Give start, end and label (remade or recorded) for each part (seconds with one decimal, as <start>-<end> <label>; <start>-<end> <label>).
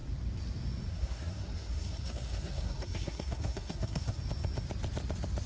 0.0-0.9 recorded; 0.9-4.2 remade; 4.2-5.5 recorded